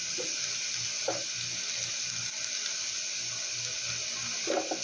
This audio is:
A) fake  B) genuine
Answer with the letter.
B